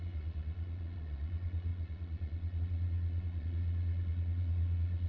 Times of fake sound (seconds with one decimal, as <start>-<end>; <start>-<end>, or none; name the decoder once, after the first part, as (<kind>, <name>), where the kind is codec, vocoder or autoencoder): 0.0-5.1 (vocoder, Vocos)